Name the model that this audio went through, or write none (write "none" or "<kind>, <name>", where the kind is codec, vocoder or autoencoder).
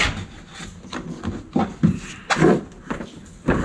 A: none